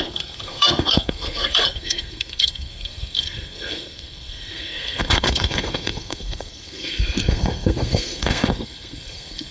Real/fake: fake